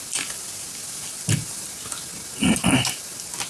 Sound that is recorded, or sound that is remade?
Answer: recorded